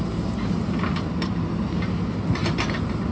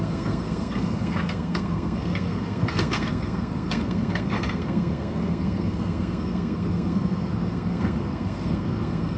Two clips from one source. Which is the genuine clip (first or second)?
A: first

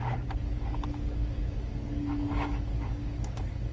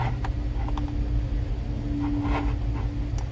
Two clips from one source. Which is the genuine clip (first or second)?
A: second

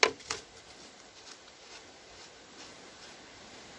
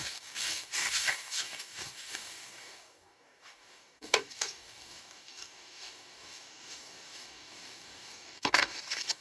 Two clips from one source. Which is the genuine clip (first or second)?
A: first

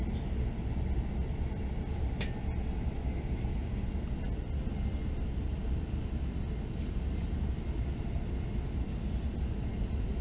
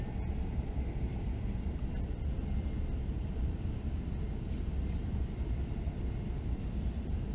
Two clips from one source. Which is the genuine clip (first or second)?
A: first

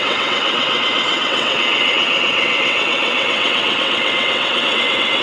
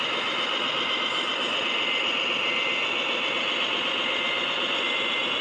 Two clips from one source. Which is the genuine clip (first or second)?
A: second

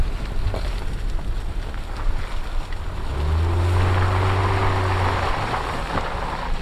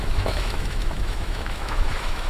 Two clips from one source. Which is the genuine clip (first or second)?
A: first